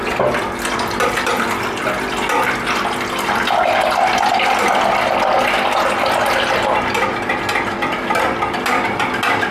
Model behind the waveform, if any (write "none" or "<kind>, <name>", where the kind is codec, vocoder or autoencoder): none